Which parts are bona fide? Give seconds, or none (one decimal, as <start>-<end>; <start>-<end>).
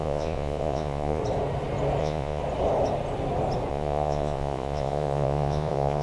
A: 1.2-2.0; 2.4-3.7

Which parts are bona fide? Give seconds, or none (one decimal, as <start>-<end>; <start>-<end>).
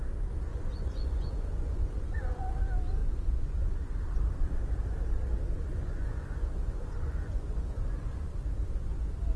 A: 0.0-0.5; 2.6-3.0; 4.1-5.7; 8.3-9.4